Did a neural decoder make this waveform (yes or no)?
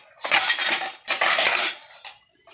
yes